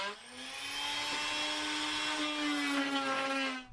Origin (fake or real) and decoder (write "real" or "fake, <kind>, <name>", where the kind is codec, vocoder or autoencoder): real